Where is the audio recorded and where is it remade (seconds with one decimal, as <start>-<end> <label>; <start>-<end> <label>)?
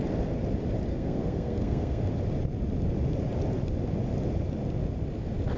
0.0-0.9 recorded; 0.9-2.1 remade; 2.1-5.6 recorded